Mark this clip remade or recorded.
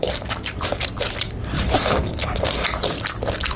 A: recorded